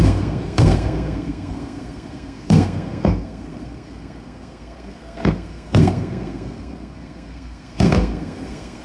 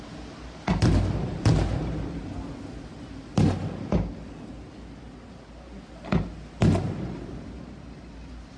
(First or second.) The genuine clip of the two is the second